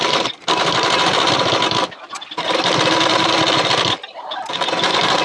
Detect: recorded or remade recorded